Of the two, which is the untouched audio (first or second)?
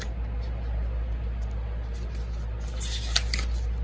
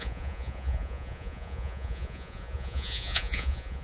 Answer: first